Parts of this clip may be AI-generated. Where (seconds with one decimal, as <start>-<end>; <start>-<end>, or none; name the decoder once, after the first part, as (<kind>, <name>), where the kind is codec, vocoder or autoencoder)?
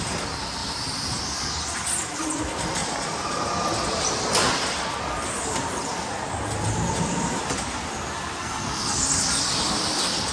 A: 8.4-9.0 (codec, SNAC)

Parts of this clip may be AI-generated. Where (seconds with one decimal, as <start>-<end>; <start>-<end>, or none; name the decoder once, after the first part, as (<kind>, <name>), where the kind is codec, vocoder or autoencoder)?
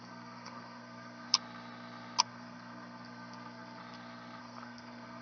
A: 0.0-1.3 (codec, SNAC); 2.2-3.8; 4.4-5.2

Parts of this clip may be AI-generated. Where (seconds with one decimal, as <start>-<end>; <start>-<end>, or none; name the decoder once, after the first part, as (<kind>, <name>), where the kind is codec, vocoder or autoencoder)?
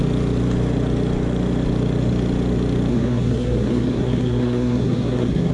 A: 2.9-5.5 (codec, SNAC)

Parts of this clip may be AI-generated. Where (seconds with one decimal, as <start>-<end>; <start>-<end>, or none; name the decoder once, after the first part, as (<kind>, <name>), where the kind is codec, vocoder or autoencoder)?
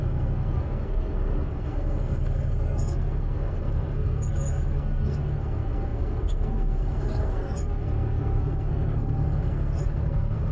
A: 0.0-10.5 (codec, SNAC)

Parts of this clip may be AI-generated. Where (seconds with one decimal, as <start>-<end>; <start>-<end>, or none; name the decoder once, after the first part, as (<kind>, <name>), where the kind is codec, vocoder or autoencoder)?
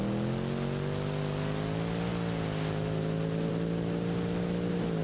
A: none